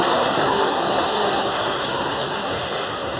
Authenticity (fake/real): fake